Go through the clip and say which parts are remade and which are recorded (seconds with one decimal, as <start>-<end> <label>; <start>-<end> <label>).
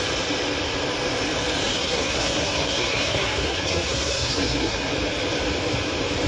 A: 0.0-1.6 recorded; 1.6-4.9 remade; 4.9-6.3 recorded